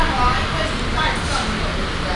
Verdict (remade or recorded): recorded